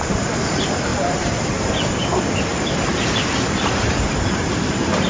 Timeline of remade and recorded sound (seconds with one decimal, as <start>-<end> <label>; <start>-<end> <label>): 0.0-3.6 remade; 3.6-5.1 recorded